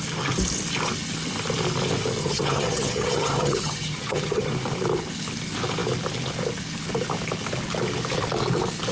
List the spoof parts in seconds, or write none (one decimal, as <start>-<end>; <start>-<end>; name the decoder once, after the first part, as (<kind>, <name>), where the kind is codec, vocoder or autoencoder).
2.2-4.5 (vocoder, HiFi-GAN)